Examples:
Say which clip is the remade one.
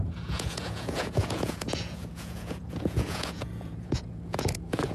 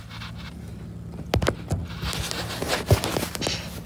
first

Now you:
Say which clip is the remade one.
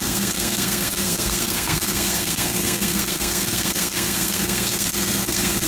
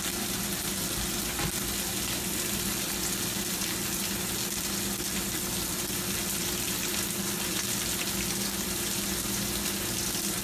first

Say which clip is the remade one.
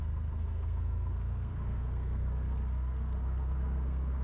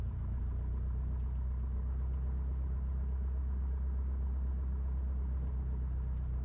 first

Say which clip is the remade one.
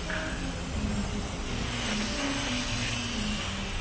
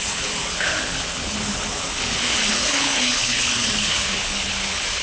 second